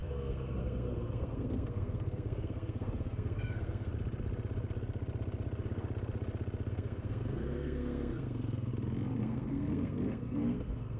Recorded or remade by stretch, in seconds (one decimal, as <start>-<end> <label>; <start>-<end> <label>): 0.0-3.9 remade; 3.9-6.7 recorded; 6.7-8.7 remade; 8.7-9.2 recorded; 9.2-11.0 remade